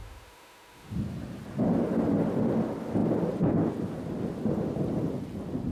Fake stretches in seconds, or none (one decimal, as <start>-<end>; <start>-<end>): 0.0-1.0